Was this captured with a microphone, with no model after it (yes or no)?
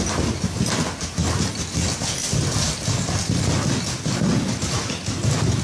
yes